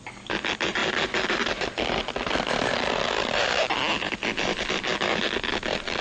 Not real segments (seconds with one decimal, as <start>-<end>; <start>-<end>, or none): none